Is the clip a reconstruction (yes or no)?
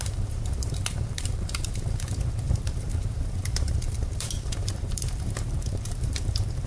yes